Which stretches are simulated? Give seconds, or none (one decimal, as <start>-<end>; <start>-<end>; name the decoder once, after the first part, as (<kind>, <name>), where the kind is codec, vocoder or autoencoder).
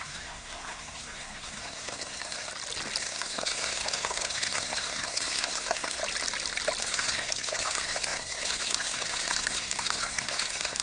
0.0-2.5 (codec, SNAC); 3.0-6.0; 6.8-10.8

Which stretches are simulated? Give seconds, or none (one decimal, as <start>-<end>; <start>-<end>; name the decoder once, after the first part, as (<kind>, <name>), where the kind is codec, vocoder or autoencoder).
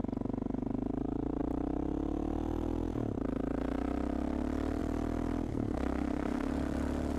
5.5-6.5 (codec, SNAC)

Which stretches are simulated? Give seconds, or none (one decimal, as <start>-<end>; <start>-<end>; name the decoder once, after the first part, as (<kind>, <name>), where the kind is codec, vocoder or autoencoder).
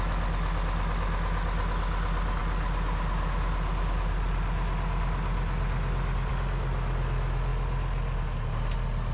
none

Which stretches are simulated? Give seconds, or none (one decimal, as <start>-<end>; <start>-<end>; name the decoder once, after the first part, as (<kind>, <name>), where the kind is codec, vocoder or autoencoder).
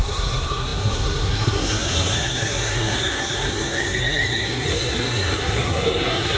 0.0-6.4 (codec, SNAC)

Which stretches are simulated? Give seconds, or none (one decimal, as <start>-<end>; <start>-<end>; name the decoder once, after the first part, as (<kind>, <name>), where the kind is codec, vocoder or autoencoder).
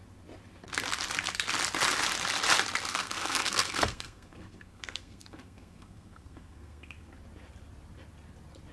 2.9-7.1 (codec, SNAC)